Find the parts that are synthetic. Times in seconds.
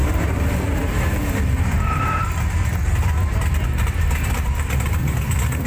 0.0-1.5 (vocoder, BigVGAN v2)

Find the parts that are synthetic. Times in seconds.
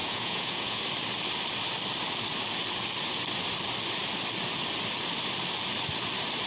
0.0-0.8 (vocoder, Vocos)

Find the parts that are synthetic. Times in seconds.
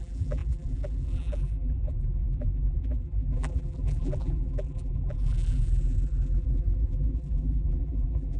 0.0-8.4 (vocoder, BigVGAN v2)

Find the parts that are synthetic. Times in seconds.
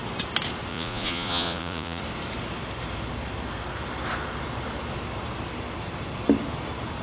0.7-2.0 (vocoder, Vocos)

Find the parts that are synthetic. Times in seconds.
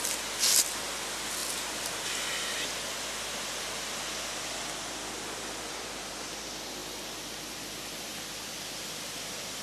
none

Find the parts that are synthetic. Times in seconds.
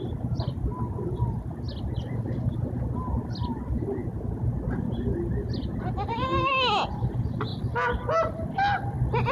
none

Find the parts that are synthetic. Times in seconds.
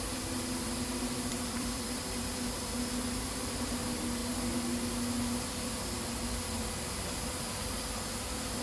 1.3-2.2 (vocoder, BigVGAN v2)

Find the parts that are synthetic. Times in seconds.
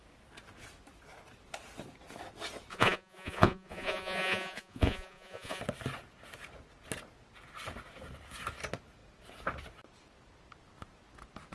2.7-5.6 (vocoder, Vocos)